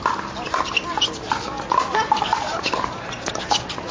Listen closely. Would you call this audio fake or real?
real